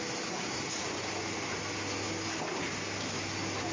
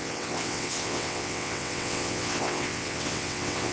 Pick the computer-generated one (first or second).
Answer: second